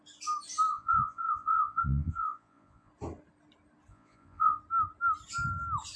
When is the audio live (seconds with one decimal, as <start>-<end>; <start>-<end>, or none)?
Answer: 0.0-0.7; 2.9-3.9; 4.6-6.0